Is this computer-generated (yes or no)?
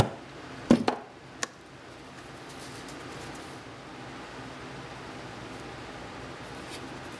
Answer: no